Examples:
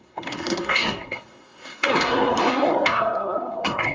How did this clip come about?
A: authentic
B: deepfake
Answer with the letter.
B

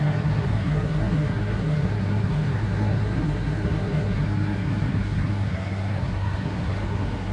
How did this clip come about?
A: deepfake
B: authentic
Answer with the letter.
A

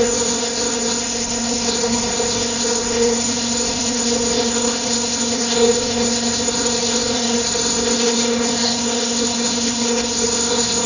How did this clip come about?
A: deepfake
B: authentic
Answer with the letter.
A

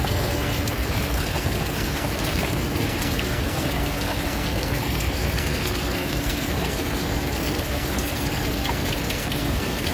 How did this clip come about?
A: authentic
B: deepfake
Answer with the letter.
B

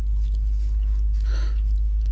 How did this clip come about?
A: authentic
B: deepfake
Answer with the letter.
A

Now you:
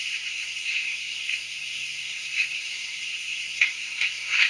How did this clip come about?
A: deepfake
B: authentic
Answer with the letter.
A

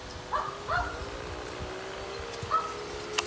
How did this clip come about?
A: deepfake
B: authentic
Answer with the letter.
B